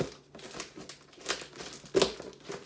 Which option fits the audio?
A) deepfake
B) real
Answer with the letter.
B